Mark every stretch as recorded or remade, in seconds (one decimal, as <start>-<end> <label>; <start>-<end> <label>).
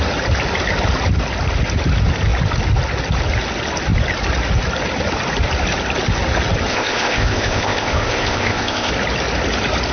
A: 0.0-6.7 recorded; 6.7-8.9 remade; 8.9-9.9 recorded